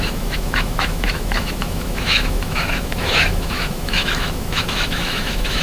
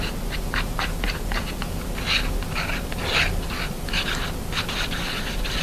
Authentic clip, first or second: second